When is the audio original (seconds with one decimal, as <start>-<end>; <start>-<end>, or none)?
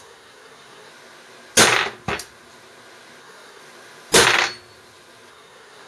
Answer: 0.9-3.2; 3.6-5.3